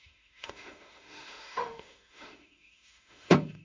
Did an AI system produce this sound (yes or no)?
yes